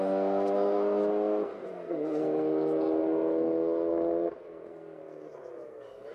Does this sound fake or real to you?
fake